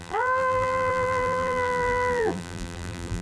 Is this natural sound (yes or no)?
no